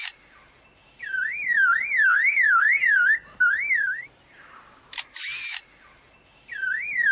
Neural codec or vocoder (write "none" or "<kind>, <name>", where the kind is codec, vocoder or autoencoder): none